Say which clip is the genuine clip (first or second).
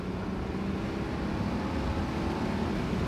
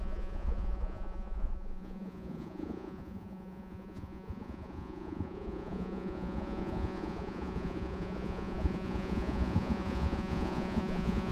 first